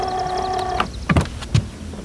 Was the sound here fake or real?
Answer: real